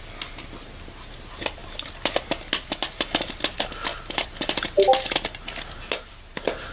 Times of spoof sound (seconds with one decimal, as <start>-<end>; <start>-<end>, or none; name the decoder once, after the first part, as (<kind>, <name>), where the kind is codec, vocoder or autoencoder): none